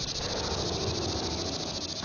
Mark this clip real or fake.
real